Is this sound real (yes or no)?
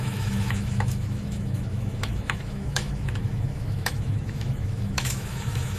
no